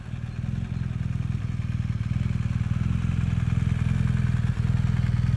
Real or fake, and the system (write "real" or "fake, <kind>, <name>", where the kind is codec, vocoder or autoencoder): real